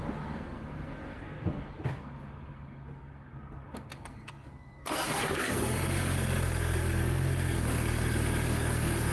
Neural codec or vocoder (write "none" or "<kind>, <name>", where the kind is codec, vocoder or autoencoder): codec, SNAC